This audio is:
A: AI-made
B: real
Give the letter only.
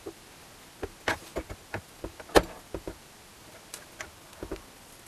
B